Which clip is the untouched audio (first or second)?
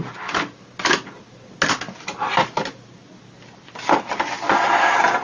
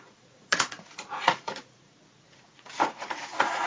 first